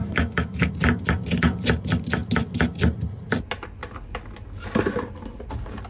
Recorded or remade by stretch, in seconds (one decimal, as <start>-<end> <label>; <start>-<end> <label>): 0.0-0.7 remade; 0.7-5.9 recorded